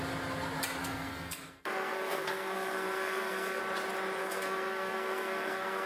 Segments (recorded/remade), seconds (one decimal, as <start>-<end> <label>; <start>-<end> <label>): 0.0-0.8 recorded; 0.8-3.6 remade; 3.6-4.2 recorded; 4.2-5.9 remade